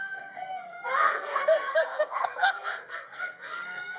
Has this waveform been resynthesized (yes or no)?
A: yes